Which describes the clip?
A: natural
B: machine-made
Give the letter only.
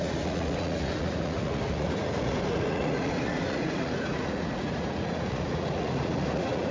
B